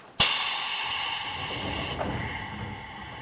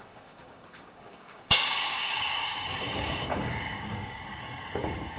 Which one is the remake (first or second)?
second